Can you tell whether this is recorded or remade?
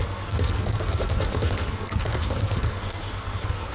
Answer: remade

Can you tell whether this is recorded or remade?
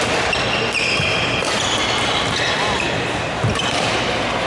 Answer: recorded